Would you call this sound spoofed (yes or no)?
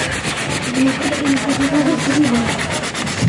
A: no